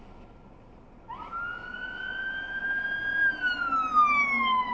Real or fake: real